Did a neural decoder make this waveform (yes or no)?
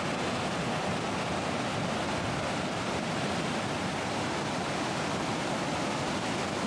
no